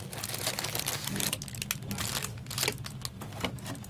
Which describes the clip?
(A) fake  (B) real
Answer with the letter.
B